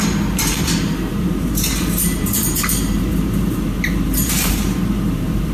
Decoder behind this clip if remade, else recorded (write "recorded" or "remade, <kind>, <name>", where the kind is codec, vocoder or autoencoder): remade, vocoder, BigVGAN v2